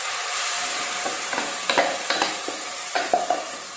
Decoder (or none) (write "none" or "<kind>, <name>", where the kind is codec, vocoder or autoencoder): none